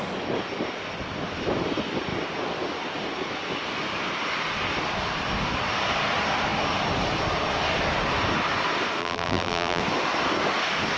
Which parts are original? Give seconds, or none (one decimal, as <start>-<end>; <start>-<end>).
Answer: 0.0-9.0; 9.8-11.0